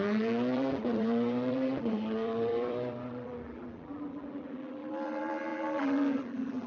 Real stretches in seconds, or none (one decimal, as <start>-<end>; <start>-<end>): none